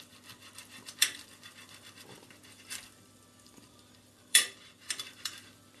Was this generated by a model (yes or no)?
yes